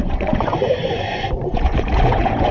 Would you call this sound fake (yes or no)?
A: yes